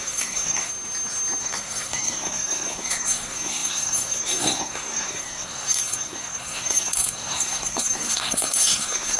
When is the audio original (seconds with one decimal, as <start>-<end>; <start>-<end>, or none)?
0.7-1.4